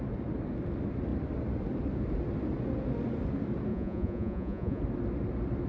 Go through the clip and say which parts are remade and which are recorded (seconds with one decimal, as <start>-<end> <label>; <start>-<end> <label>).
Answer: 0.0-3.7 recorded; 3.7-4.8 remade; 4.8-5.7 recorded